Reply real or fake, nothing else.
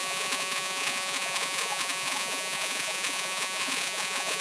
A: fake